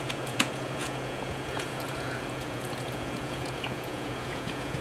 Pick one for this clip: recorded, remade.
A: remade